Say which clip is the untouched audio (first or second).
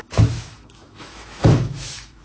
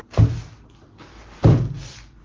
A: second